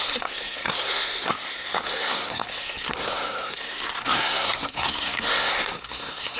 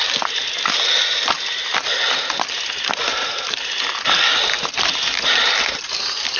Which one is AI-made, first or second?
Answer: first